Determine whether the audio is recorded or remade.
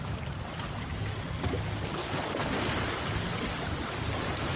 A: recorded